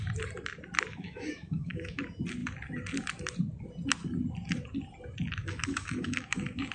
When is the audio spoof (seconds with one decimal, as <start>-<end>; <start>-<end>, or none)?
0.9-2.0; 5.4-6.7